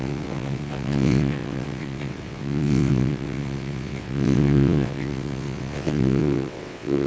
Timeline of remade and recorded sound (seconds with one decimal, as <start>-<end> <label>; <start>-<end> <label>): 0.0-7.1 remade